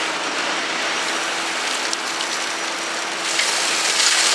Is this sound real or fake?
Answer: real